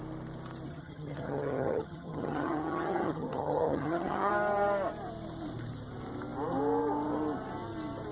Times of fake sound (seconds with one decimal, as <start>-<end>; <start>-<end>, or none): 0.7-4.3